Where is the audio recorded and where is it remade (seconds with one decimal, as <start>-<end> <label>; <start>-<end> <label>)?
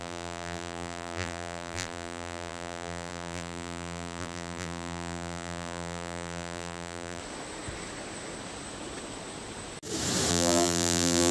0.0-7.2 remade; 7.2-10.3 recorded; 10.3-11.3 remade